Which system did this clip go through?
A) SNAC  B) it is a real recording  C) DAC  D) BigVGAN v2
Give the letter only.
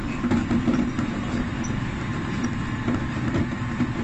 B